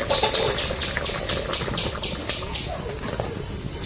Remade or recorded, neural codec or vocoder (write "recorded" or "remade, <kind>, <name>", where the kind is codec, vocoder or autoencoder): recorded